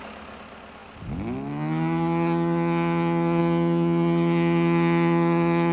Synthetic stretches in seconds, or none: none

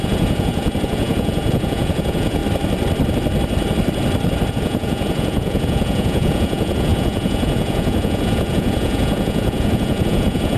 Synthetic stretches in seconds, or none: 0.0-2.4 (vocoder, Vocos); 4.5-10.6

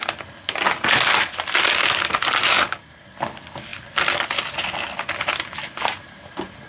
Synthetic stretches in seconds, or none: none

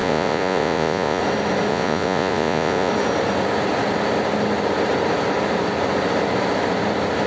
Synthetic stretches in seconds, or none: 0.0-1.2 (vocoder, Vocos); 1.7-2.9

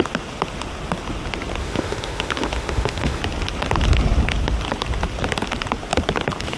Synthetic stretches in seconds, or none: 1.6-3.2 (autoencoder, DAC-VAE)

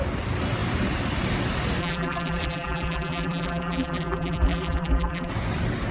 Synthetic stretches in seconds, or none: 1.8-5.3 (vocoder, BigVGAN v2)